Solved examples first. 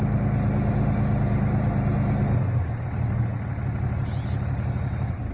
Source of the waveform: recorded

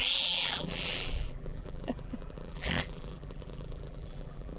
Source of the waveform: remade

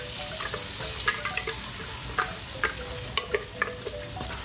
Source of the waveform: recorded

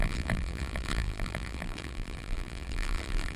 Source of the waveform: remade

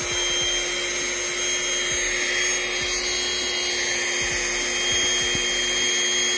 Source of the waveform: recorded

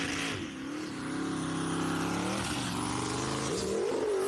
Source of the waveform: recorded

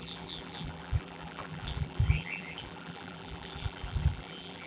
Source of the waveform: remade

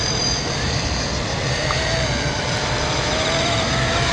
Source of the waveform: remade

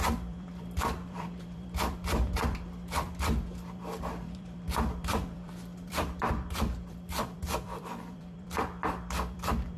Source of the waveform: remade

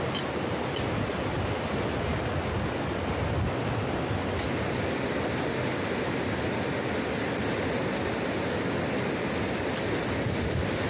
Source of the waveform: recorded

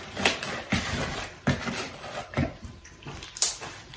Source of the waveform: remade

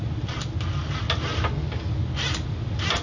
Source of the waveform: recorded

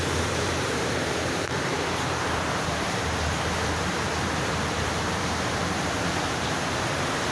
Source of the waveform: remade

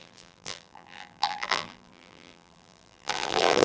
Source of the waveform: remade